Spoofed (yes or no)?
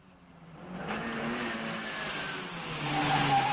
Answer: no